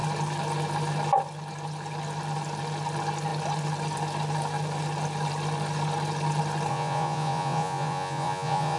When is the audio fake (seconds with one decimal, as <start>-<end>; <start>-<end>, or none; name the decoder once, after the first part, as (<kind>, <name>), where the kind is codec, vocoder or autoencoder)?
6.7-8.8 (vocoder, Vocos)

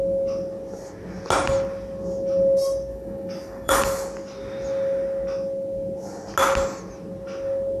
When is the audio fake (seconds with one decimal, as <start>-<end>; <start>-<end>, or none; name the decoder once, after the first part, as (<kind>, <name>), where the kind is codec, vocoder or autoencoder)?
2.9-3.8 (codec, DAC)

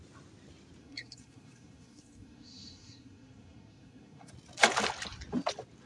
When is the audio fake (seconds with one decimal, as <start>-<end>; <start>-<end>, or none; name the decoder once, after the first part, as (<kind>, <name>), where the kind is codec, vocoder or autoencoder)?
0.8-4.3 (codec, SNAC)

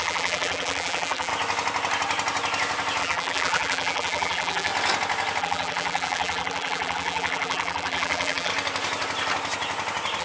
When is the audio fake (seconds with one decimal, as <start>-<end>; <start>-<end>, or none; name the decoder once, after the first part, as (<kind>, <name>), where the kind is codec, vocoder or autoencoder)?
0.0-1.3 (vocoder, BigVGAN v2); 3.0-4.7; 5.4-8.5

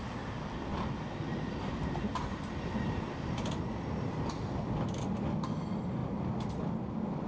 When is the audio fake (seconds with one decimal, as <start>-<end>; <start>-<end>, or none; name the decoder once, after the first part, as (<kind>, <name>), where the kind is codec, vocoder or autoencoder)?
0.7-3.5 (vocoder, BigVGAN v2)

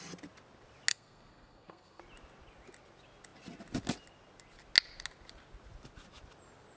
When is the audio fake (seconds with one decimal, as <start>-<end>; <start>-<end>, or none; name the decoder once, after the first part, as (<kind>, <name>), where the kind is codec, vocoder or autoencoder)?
0.9-2.0 (codec, SNAC)

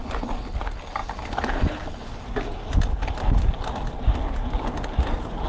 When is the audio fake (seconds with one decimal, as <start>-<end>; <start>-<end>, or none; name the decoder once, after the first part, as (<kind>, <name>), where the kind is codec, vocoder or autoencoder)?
1.0-1.9 (vocoder, BigVGAN v2)